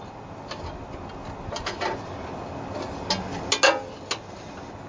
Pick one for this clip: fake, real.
real